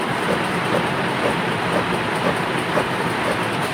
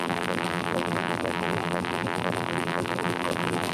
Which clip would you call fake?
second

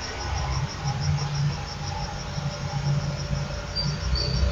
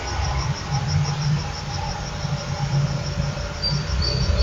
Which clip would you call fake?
second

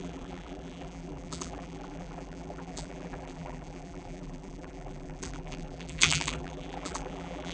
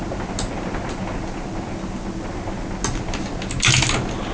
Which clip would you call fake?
first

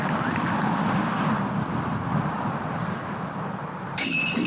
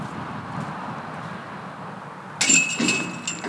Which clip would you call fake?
first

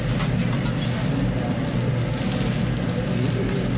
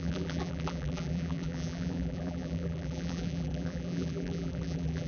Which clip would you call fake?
second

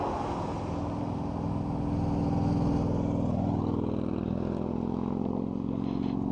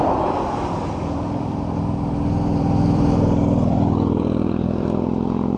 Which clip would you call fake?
second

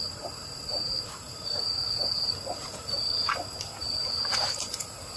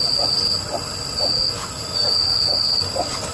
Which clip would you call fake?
first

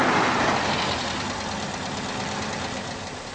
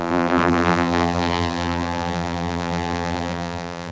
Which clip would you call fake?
second